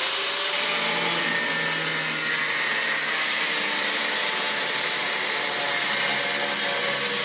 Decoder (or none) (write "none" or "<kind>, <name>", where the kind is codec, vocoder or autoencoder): none